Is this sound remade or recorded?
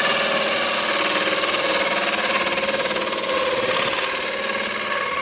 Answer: recorded